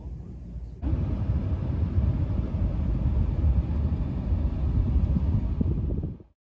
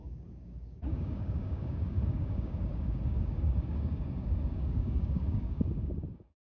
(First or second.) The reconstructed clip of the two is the second